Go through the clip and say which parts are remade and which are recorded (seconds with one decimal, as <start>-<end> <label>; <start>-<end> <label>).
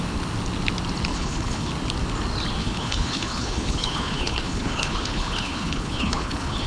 0.0-1.1 recorded; 1.1-1.7 remade; 1.7-2.6 recorded; 2.6-6.7 remade